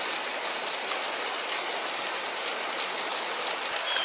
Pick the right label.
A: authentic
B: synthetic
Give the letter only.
A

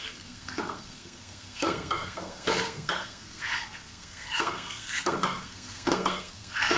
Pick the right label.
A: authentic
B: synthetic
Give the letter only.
B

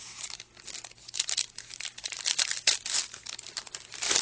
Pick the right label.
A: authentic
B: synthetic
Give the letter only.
A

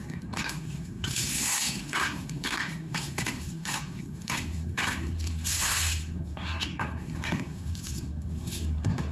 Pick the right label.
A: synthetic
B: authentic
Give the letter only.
A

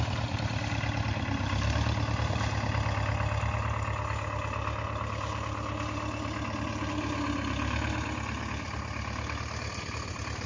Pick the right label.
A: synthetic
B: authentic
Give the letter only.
B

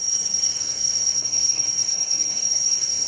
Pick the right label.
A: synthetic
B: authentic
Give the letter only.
A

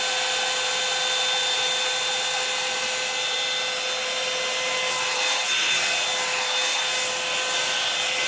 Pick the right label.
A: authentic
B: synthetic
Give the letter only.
A